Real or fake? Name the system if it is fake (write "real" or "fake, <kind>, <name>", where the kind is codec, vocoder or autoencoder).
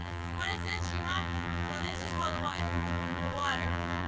fake, vocoder, BigVGAN v2